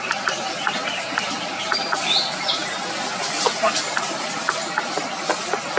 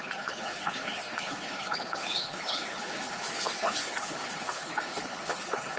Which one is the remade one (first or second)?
second